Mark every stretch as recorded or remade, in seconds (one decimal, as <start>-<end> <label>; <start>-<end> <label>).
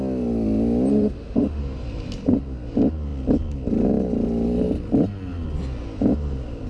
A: 0.0-0.9 recorded; 0.9-1.6 remade; 1.6-6.7 recorded